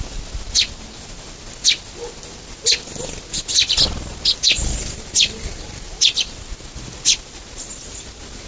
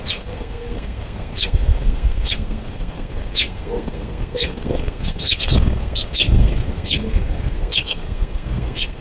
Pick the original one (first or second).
first